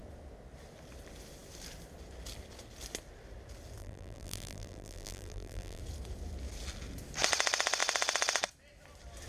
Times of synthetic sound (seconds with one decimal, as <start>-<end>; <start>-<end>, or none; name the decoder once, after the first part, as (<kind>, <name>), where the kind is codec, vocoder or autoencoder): 3.8-5.8 (vocoder, BigVGAN v2)